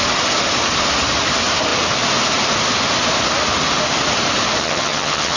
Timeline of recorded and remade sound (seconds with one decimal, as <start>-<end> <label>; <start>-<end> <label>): 0.0-4.6 recorded; 4.6-5.4 remade